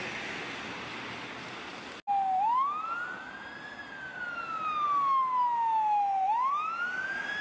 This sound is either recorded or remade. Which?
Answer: recorded